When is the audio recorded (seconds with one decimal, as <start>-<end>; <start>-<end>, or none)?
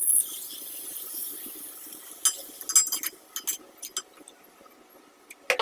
0.0-5.6